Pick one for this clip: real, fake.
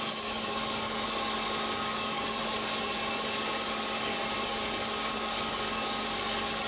fake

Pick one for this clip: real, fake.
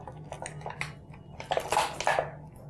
real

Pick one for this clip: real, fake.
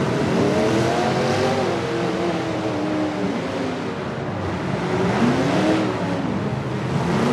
real